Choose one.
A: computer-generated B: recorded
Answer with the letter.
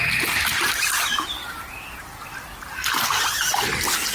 B